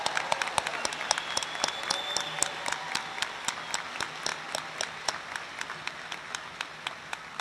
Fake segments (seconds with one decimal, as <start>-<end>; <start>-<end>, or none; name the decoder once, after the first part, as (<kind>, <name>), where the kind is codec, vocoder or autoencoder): none